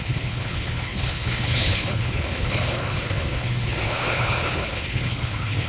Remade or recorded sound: remade